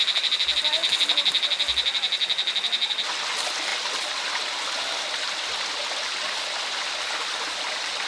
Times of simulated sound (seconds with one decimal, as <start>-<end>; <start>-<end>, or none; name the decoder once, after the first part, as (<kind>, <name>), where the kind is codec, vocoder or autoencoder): none